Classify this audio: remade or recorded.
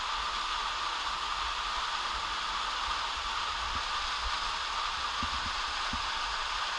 recorded